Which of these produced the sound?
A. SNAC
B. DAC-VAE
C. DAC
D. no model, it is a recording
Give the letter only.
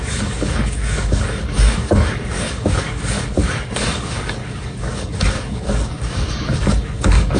C